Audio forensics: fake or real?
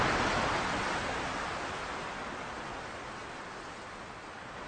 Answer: real